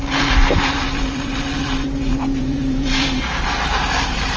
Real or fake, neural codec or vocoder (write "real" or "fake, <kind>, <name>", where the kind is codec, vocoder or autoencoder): fake, vocoder, BigVGAN v2